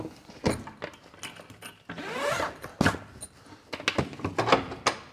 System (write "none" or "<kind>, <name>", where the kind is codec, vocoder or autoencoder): none